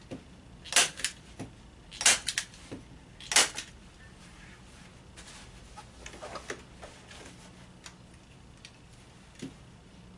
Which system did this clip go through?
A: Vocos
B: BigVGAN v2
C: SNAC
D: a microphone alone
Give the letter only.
D